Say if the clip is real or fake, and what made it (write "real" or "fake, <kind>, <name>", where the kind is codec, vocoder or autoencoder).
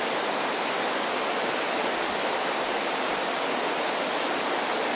real